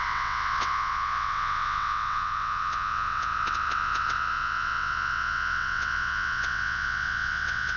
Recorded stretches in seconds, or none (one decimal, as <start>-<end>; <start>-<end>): none